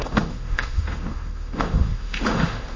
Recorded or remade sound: remade